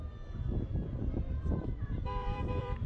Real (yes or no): no